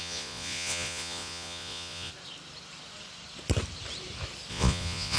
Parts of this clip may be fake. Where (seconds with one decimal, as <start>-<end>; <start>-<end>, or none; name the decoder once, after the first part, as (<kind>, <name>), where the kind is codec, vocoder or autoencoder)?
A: 0.0-2.1 (vocoder, Vocos); 4.5-5.2